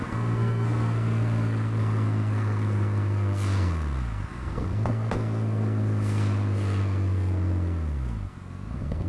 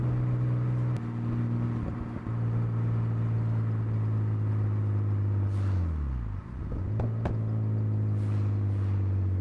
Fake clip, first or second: first